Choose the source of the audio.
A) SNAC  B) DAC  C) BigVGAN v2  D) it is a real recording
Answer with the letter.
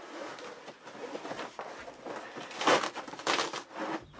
D